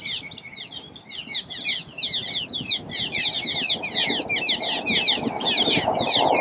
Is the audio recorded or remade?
recorded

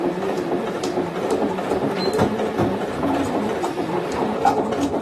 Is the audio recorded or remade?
remade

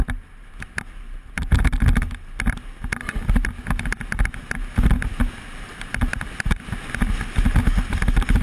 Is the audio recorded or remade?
recorded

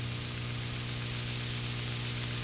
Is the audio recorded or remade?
recorded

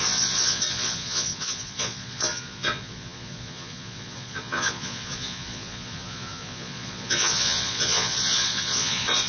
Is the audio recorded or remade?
remade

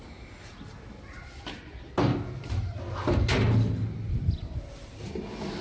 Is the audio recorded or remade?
recorded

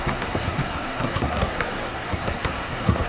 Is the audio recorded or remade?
remade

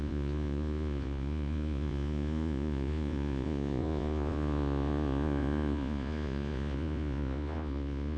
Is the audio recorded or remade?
remade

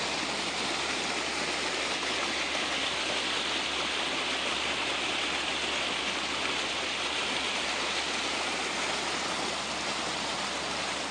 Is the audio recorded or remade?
recorded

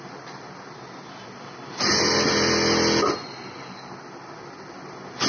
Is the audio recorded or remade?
recorded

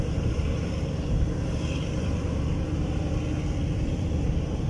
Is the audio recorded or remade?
recorded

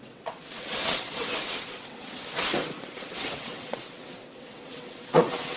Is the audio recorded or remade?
remade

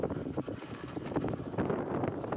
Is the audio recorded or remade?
recorded